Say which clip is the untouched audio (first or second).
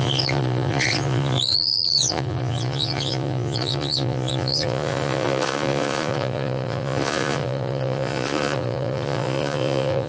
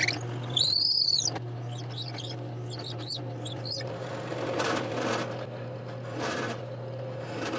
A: second